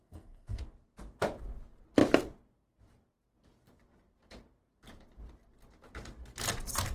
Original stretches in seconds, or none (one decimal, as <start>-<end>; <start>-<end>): 0.6-6.9